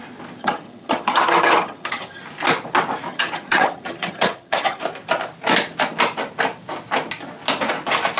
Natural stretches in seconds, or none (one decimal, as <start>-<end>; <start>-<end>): 0.0-0.4; 2.2-3.1; 4.8-8.2